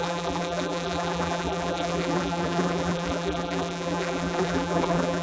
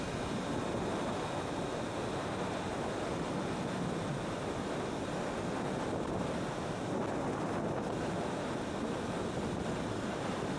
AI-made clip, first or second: first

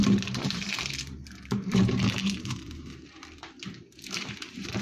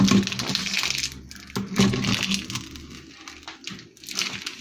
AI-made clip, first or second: first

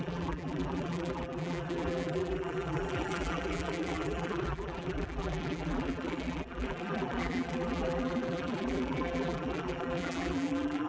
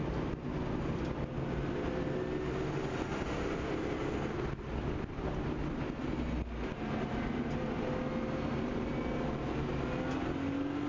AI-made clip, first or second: first